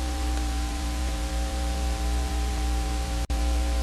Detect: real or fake fake